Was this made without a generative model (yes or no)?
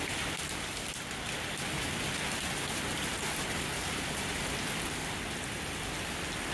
yes